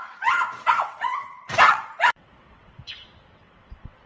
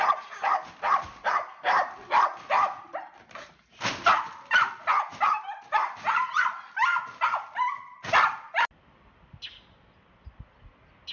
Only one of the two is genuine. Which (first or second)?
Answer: second